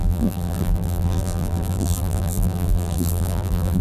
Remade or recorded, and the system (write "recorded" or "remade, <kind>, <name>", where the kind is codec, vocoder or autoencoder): remade, vocoder, BigVGAN v2